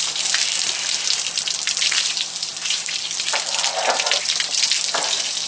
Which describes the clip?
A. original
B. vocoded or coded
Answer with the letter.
A